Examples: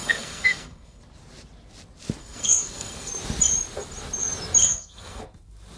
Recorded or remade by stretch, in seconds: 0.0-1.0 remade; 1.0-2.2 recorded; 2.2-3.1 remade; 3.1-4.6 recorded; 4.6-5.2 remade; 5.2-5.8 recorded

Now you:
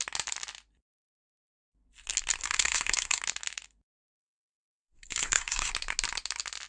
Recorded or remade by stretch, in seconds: 0.0-2.4 recorded; 2.4-3.2 remade; 3.2-4.2 recorded; 4.2-5.7 remade; 5.7-6.7 recorded